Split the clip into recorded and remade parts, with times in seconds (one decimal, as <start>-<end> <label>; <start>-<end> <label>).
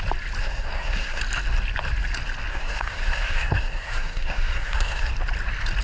0.0-0.4 recorded; 0.4-1.2 remade; 1.2-2.5 recorded; 2.5-5.1 remade; 5.1-5.8 recorded